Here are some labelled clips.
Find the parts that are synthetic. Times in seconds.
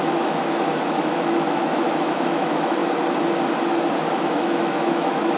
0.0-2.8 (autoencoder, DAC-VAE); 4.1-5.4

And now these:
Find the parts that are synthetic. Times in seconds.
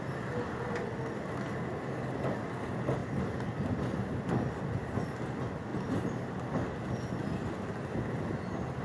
none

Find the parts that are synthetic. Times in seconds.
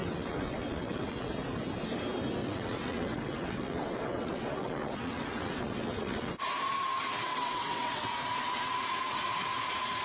0.0-1.3 (vocoder, WaveNeXt); 2.4-6.3; 7.3-8.1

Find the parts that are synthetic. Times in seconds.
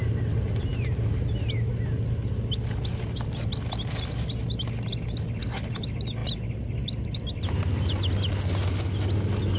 0.7-1.7 (vocoder, BigVGAN v2)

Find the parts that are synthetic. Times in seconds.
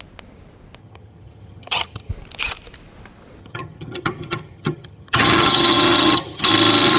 0.8-2.1 (vocoder, HiFi-GAN); 3.4-6.5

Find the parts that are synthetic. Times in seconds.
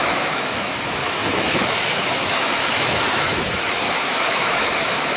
0.0-5.2 (autoencoder, DAC-VAE)